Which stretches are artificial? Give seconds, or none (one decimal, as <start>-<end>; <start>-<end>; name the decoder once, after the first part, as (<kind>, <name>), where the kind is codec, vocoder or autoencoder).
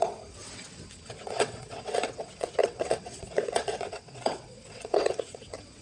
0.0-5.8 (vocoder, WaveNeXt)